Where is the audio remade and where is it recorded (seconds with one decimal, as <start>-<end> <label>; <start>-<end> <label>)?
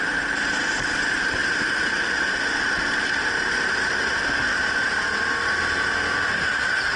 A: 0.0-7.0 recorded